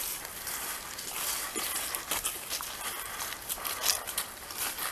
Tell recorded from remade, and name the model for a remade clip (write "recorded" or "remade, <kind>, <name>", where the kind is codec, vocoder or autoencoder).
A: recorded